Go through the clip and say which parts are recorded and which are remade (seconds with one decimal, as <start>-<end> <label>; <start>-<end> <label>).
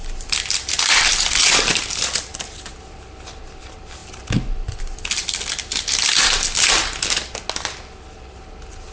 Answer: 0.0-8.9 recorded